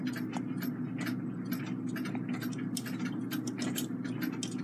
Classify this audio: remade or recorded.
recorded